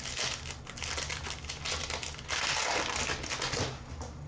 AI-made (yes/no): no